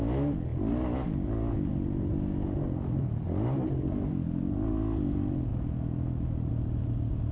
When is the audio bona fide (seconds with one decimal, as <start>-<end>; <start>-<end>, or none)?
0.0-2.1; 4.7-7.3